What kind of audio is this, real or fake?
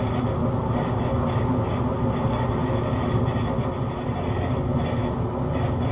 real